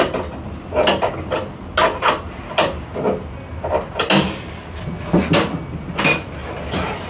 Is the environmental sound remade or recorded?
recorded